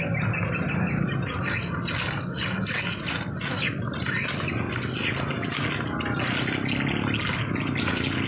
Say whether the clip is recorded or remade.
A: recorded